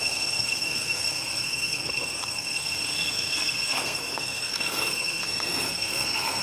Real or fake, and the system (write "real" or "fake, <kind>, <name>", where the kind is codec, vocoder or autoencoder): fake, codec, SNAC